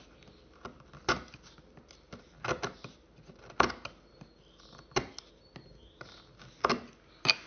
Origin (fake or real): real